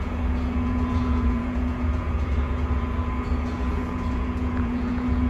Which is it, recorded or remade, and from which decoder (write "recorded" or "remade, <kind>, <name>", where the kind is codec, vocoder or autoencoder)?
remade, vocoder, Vocos